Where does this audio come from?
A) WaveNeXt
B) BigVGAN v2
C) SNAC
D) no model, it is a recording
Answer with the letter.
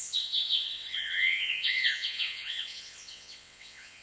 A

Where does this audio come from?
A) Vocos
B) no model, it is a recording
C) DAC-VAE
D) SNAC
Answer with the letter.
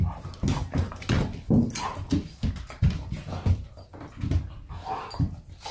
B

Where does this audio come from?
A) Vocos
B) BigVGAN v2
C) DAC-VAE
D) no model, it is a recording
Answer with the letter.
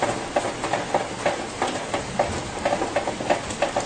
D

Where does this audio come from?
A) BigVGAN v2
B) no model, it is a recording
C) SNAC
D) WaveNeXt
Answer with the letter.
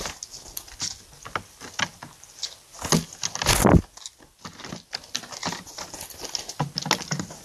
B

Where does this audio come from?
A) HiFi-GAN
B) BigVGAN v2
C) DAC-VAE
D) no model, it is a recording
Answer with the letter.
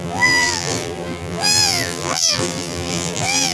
B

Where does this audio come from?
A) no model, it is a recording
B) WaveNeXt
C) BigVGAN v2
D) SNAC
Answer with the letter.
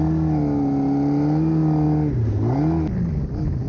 A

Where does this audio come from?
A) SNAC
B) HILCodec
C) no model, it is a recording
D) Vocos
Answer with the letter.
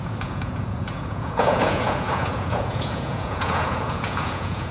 D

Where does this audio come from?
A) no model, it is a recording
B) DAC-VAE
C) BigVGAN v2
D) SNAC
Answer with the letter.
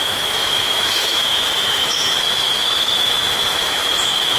B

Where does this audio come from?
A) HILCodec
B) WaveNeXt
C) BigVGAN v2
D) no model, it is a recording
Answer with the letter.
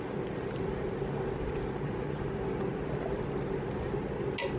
D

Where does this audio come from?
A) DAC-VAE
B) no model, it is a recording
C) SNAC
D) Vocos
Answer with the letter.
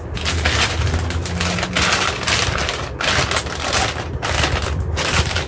B